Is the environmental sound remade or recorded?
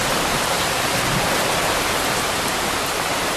remade